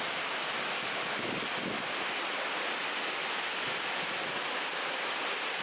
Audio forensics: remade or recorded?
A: recorded